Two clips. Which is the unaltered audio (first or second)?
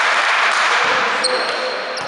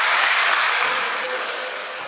first